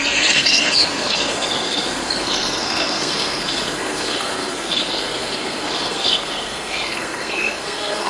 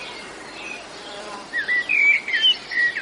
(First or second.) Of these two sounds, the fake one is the first